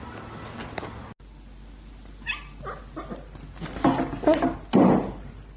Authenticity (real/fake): real